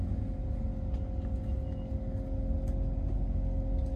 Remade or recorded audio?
recorded